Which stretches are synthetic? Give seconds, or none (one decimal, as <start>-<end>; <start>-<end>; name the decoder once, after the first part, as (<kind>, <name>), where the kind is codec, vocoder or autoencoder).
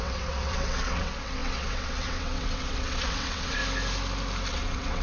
0.0-3.6 (vocoder, WaveNeXt); 4.5-5.0